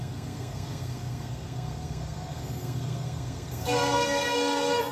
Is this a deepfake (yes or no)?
yes